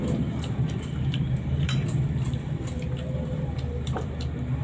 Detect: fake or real fake